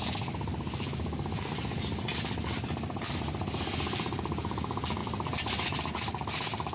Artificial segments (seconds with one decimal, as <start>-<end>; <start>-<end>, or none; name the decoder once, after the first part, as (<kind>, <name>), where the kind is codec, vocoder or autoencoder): none